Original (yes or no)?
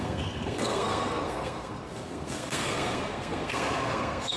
no